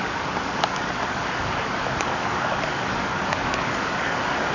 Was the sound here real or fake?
fake